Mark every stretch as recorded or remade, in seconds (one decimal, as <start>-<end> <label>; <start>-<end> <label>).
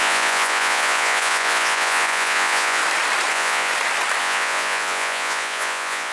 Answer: 0.0-2.8 remade; 2.8-3.3 recorded; 3.3-3.7 remade; 3.7-4.2 recorded; 4.2-6.1 remade